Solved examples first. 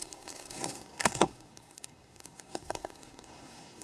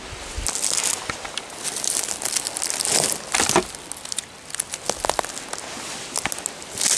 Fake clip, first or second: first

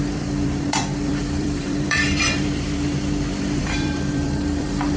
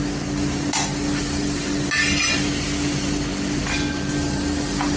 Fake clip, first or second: first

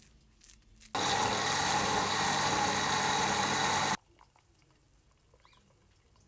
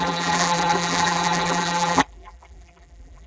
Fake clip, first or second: second